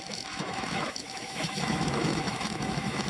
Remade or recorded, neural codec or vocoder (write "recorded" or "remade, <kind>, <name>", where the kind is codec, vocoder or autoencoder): remade, autoencoder, DAC-VAE